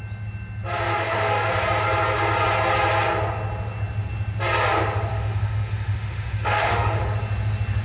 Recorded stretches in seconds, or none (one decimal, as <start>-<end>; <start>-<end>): 0.0-0.9; 1.5-5.1; 7.0-7.8